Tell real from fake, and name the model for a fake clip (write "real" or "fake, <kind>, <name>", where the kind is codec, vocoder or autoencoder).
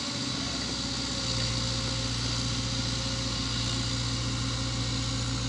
real